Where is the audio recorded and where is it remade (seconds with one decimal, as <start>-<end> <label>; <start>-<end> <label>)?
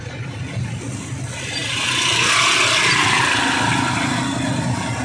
0.0-5.0 recorded